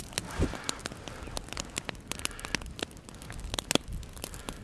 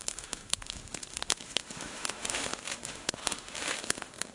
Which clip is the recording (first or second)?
first